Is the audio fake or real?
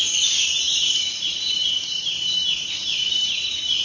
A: fake